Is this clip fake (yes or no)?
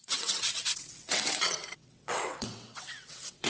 yes